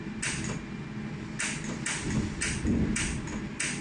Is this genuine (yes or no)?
yes